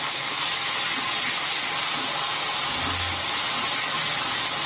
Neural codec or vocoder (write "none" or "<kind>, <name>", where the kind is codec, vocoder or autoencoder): none